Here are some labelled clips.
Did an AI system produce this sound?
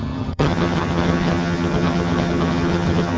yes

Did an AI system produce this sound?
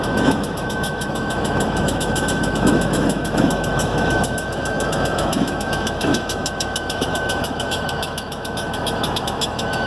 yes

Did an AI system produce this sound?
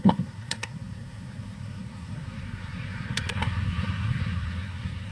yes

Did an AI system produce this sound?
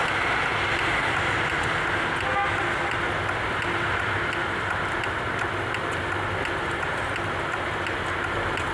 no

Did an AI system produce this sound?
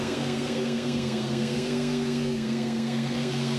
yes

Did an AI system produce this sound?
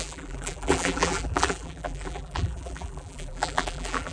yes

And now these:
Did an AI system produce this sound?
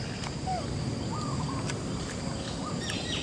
no